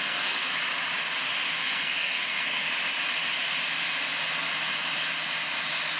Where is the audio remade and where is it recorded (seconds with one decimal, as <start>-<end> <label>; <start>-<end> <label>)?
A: 0.0-0.5 remade; 0.5-1.5 recorded; 1.5-2.7 remade; 2.7-6.0 recorded